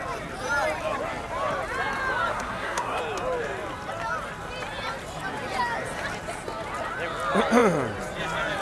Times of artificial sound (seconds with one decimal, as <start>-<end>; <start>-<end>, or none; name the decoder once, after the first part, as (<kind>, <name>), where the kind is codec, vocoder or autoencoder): 2.3-3.0 (codec, SNAC)